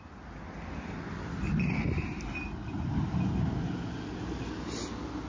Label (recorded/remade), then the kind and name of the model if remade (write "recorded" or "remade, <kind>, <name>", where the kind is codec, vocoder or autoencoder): recorded